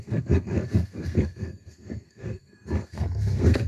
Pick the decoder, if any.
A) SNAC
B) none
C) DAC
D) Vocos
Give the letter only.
A